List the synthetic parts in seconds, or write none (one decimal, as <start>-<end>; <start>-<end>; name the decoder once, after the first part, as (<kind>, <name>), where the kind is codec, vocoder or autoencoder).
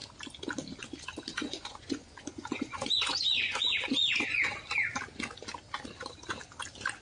1.4-4.5 (vocoder, Vocos)